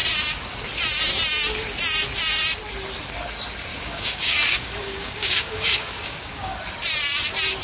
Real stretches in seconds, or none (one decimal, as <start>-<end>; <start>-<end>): 0.0-3.7; 6.6-7.6